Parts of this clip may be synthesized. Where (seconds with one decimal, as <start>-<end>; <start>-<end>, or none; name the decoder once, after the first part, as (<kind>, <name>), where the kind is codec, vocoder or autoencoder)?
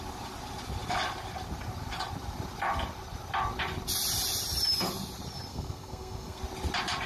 5.5-6.4 (codec, SNAC)